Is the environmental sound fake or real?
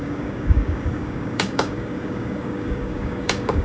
fake